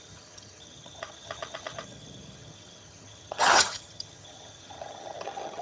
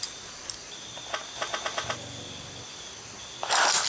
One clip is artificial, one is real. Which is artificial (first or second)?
first